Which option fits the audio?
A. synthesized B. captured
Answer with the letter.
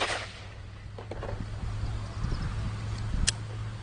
B